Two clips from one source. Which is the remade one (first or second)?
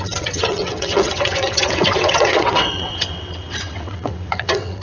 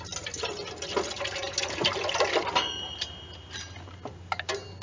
first